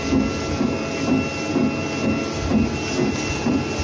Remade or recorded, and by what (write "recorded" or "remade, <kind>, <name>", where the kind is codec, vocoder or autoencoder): recorded